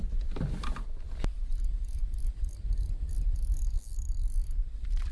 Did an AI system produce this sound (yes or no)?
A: no